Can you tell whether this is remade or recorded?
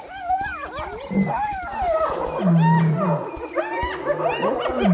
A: recorded